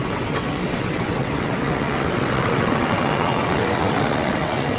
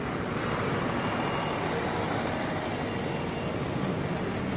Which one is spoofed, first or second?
first